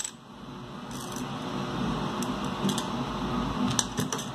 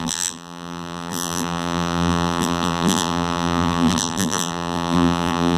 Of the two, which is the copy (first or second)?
second